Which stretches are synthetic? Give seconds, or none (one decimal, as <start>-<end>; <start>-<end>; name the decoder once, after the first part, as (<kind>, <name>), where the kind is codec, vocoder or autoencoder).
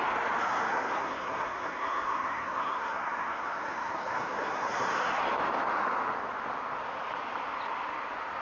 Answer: 0.4-5.2 (codec, SNAC)